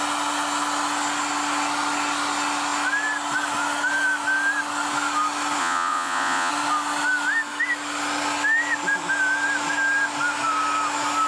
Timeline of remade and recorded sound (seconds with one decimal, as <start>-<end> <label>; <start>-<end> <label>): 0.0-5.6 recorded; 5.6-6.5 remade; 6.5-11.3 recorded